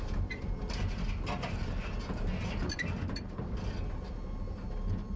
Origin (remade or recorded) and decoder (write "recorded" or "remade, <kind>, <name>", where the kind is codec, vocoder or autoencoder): recorded